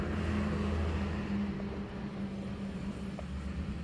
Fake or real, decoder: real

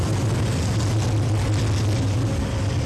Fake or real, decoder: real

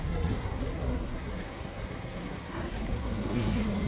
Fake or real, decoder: fake, codec, SNAC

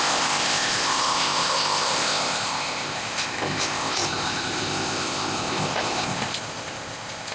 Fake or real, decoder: fake, codec, ZipCodec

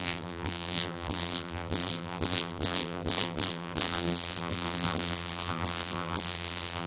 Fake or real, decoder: fake, vocoder, BigVGAN v2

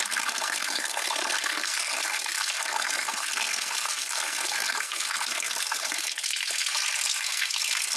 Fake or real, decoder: fake, codec, SNAC